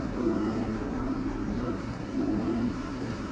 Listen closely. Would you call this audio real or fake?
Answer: fake